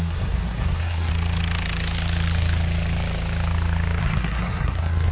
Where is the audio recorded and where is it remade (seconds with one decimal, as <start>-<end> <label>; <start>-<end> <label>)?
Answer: 0.0-1.1 remade; 1.1-4.0 recorded; 4.0-5.1 remade